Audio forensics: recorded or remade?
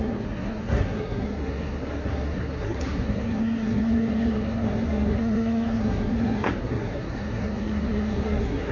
remade